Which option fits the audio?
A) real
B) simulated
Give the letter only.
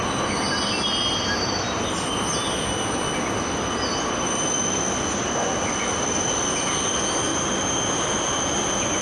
A